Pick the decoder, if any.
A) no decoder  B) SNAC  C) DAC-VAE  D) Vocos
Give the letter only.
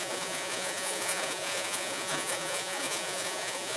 D